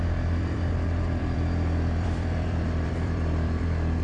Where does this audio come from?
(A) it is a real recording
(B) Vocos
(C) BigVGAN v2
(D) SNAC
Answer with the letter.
C